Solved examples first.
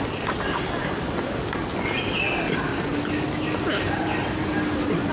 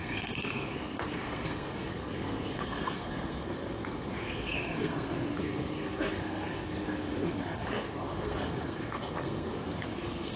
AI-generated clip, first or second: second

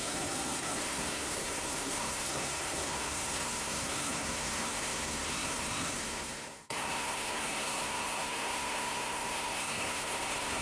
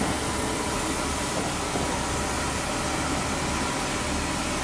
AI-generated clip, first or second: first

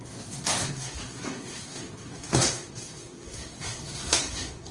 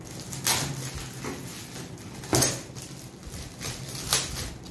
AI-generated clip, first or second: first